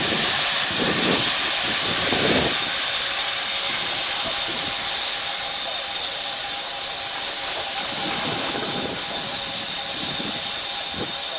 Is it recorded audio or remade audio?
recorded